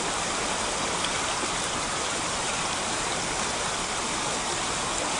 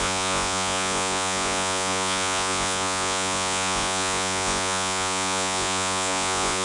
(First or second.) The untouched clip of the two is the first